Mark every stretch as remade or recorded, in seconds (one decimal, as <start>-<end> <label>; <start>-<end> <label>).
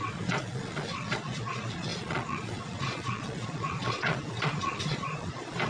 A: 0.0-5.7 remade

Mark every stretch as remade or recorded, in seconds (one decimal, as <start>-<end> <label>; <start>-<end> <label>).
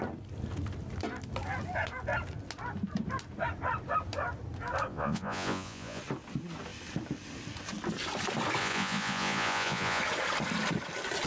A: 0.0-4.9 recorded; 4.9-6.0 remade; 6.0-8.6 recorded; 8.6-10.0 remade; 10.0-11.3 recorded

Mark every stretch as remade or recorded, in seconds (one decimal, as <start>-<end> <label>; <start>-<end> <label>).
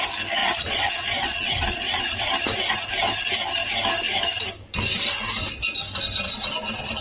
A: 0.0-0.4 recorded; 0.4-2.2 remade; 2.2-7.0 recorded